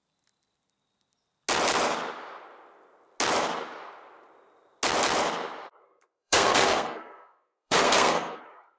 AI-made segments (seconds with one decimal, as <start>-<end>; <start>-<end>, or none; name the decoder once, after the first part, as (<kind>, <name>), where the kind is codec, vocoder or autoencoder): 5.8-8.4 (codec, SNAC)